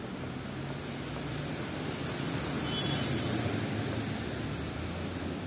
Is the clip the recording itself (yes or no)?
yes